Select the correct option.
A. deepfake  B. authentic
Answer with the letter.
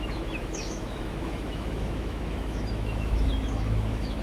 A